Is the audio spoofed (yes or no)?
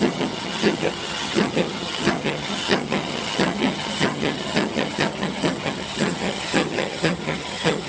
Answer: yes